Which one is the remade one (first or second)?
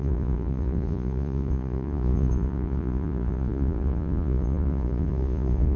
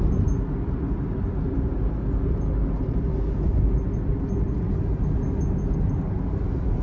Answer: first